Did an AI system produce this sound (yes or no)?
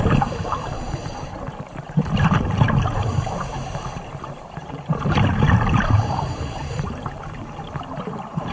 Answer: yes